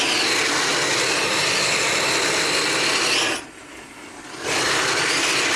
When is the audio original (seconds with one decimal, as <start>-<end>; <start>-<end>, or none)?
0.0-5.6